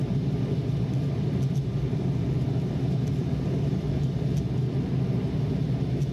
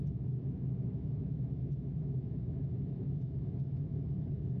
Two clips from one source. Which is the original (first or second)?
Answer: first